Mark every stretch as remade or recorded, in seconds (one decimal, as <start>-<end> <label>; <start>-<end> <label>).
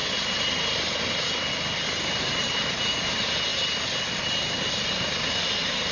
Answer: 0.0-5.9 recorded